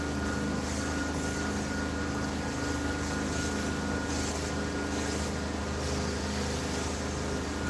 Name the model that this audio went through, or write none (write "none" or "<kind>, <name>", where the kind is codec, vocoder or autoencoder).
none